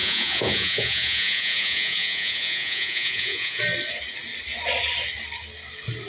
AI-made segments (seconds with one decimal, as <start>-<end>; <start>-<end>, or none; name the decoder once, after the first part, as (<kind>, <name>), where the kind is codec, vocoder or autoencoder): 0.0-3.6 (vocoder, Vocos)